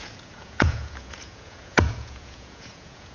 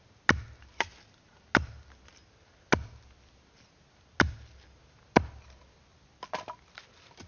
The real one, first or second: second